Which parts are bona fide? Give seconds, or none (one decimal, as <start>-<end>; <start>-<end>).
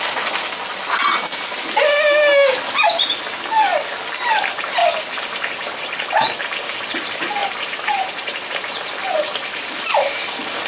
0.0-7.4; 8.9-10.7